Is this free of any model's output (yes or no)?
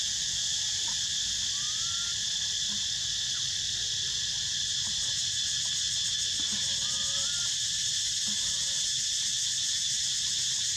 yes